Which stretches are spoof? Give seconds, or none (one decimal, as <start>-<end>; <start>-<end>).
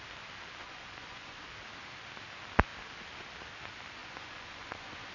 0.6-1.5; 4.0-5.1